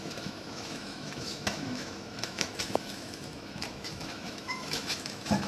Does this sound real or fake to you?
fake